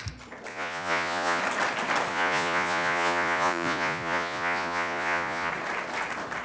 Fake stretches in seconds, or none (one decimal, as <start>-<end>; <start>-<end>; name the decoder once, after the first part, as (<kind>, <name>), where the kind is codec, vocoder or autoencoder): 0.5-1.4 (vocoder, Vocos); 2.1-5.5